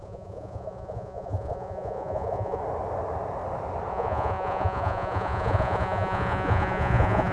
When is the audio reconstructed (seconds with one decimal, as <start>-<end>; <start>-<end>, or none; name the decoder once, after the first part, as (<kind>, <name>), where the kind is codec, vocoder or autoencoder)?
0.0-2.6 (vocoder, Vocos); 3.9-7.3